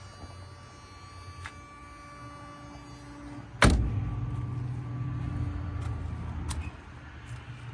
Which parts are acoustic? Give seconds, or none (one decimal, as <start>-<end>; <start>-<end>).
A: 0.0-7.7